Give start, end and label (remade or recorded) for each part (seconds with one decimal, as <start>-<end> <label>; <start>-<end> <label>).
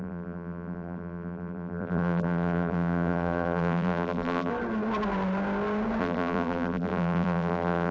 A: 0.0-4.5 remade; 4.5-6.0 recorded; 6.0-7.9 remade